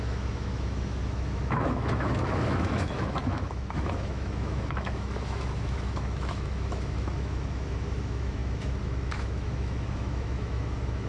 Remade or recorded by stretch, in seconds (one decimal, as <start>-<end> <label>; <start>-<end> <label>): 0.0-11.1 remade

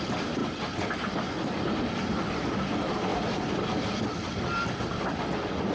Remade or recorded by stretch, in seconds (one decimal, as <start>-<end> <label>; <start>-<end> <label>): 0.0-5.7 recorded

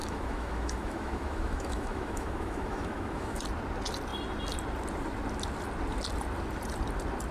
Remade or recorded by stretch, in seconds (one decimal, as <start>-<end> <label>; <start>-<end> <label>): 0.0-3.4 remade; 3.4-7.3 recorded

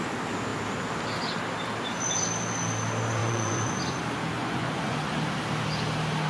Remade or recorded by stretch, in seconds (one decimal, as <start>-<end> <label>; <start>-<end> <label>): 0.0-3.2 recorded; 3.2-3.7 remade; 3.7-4.4 recorded; 4.4-5.1 remade; 5.1-6.3 recorded